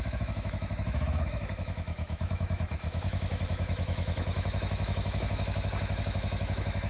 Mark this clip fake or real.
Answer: fake